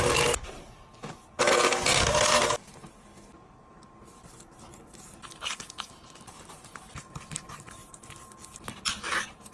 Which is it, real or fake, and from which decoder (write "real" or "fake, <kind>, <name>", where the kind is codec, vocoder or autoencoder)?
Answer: real